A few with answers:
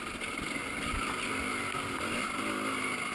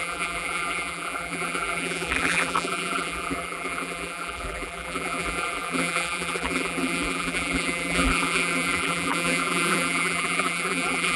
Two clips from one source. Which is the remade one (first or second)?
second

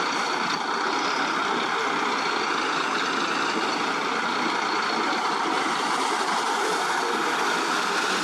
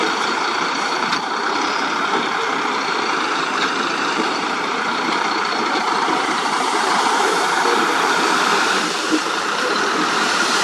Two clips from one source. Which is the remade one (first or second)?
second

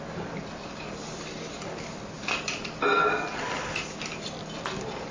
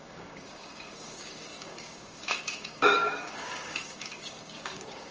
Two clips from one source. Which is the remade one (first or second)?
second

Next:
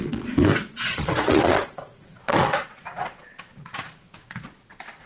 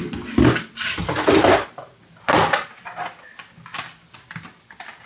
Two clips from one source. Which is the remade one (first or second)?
first